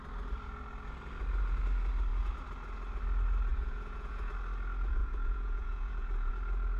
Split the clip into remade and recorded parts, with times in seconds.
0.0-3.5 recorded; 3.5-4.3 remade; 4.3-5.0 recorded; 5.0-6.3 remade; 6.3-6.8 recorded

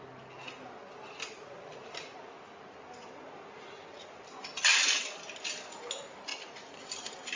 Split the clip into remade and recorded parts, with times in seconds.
0.0-7.4 recorded

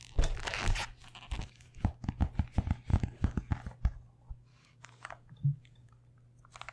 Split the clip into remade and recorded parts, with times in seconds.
0.0-1.4 recorded; 1.4-2.1 remade; 2.1-2.9 recorded; 2.9-3.5 remade; 3.5-4.5 recorded; 4.5-5.9 remade; 5.9-6.7 recorded